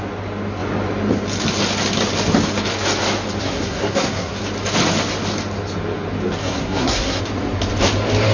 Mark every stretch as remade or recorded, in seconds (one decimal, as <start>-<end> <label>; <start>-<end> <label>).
0.0-3.4 recorded; 3.4-4.4 remade; 4.4-6.4 recorded; 6.4-7.2 remade; 7.2-8.3 recorded